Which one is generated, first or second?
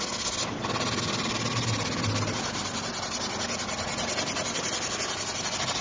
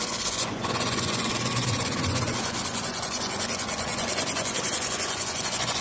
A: second